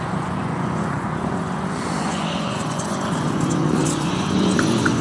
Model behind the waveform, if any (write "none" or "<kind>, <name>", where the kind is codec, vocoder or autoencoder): vocoder, Vocos